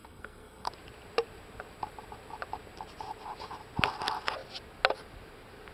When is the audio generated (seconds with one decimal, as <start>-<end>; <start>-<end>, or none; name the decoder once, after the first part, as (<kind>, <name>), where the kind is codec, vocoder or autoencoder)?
0.0-0.7 (codec, SNAC)